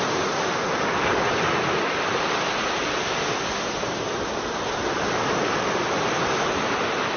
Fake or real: real